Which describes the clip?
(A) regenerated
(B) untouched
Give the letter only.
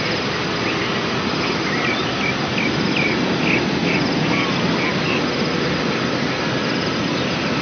B